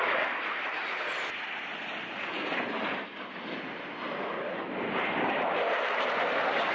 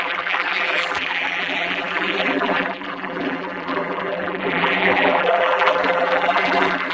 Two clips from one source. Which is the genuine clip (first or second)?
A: first